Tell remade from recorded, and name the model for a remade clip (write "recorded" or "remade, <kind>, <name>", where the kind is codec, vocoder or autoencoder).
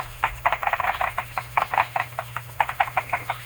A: remade, autoencoder, DAC-VAE